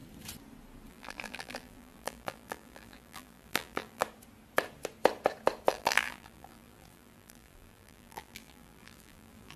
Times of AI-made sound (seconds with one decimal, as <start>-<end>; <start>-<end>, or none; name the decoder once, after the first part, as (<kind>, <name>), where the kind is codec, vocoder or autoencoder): 0.9-4.0 (vocoder, BigVGAN v2); 5.7-9.6